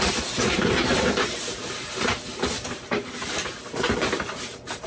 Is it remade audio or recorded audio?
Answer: remade